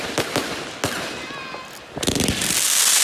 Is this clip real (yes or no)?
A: yes